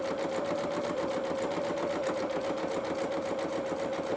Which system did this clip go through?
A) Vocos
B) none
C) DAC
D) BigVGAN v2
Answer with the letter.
B